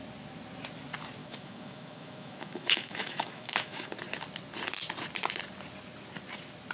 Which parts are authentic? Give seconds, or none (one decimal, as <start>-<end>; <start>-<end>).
0.0-1.2; 3.9-6.7